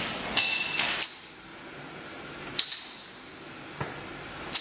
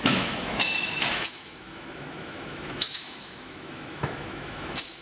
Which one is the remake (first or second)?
second